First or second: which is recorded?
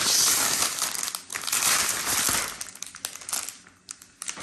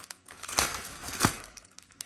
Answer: first